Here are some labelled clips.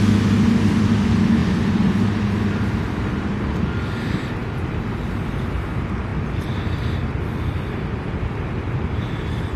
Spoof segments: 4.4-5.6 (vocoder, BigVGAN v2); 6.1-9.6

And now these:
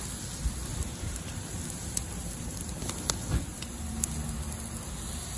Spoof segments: 0.7-2.8 (vocoder, BigVGAN v2); 3.5-4.1

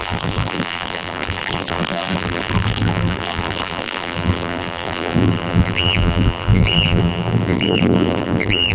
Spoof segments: 0.0-8.7 (vocoder, BigVGAN v2)

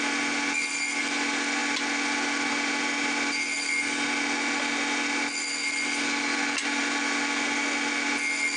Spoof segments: none

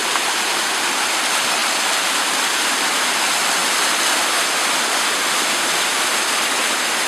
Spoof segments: 0.0-0.7 (vocoder, BigVGAN v2)

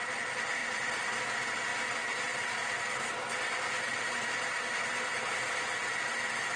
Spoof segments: none

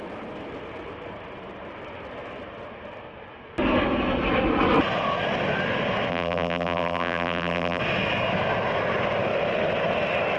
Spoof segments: 6.1-7.8 (vocoder, BigVGAN v2)